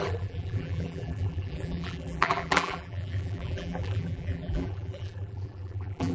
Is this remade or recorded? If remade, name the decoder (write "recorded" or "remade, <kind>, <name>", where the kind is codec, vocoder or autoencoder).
remade, vocoder, BigVGAN v2